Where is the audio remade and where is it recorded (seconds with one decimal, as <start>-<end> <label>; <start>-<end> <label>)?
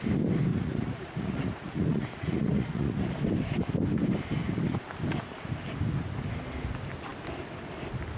0.0-0.5 recorded; 0.5-3.1 remade; 3.1-8.2 recorded